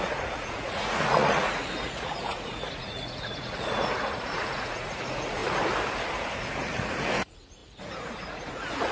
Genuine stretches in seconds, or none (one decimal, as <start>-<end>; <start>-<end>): 5.4-6.4